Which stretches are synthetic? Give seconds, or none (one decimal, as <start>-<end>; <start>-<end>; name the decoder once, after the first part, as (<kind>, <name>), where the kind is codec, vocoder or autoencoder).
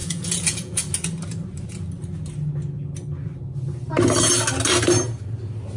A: 0.0-0.8 (vocoder, Vocos)